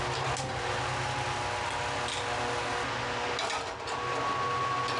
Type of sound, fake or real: real